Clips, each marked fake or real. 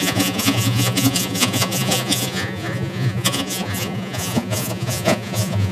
fake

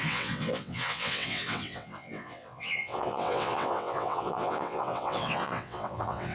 fake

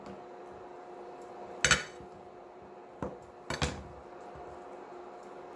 real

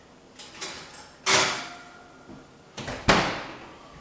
real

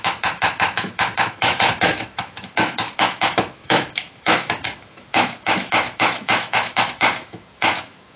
fake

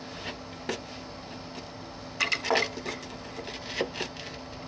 real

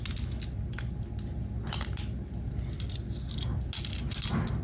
real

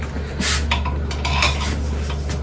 real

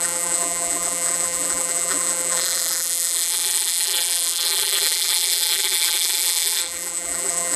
fake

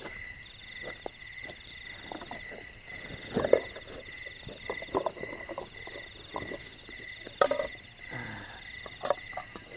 real